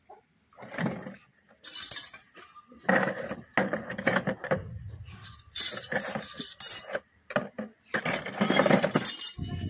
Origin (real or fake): real